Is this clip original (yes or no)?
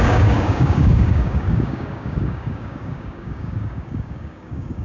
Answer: no